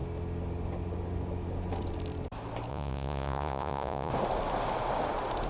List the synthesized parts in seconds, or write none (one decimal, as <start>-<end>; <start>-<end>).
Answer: 2.7-4.1